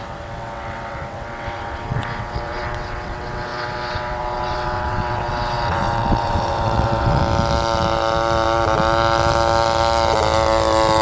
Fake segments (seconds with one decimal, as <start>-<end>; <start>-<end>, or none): 0.0-7.2